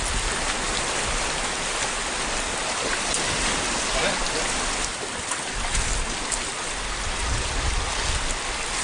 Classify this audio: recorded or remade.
recorded